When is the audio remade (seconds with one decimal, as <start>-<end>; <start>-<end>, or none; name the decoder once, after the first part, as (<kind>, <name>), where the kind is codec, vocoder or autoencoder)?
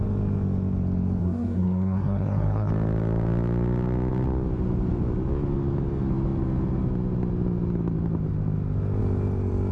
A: 1.2-2.7 (codec, SNAC)